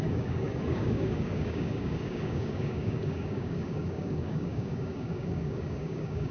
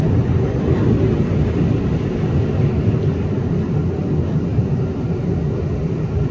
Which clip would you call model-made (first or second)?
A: first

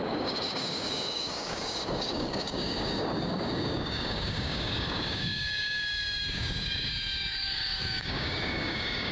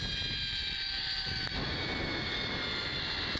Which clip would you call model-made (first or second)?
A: first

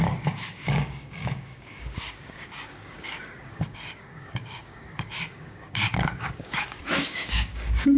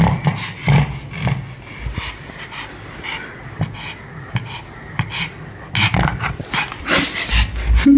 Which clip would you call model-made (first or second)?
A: first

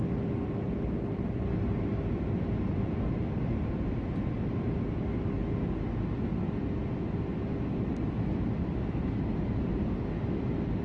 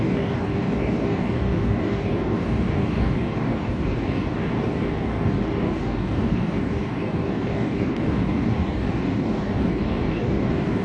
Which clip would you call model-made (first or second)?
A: second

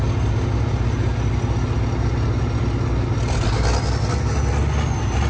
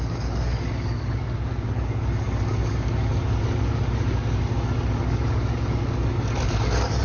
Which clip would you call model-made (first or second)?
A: second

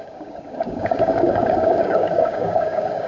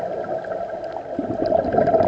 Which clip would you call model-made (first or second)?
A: first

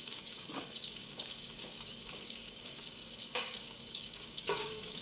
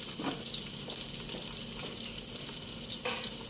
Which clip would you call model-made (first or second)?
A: first